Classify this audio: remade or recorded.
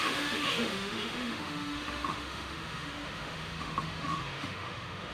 remade